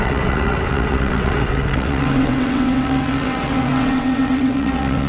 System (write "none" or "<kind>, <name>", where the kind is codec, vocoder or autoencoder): vocoder, WaveNeXt